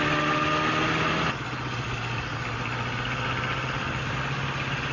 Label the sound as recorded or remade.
recorded